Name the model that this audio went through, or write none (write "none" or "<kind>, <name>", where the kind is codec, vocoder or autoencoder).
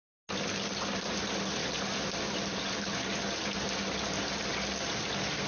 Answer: none